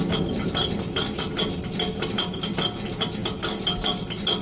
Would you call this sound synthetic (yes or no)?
no